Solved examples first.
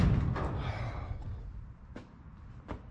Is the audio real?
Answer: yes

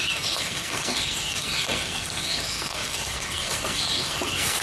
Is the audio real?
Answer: no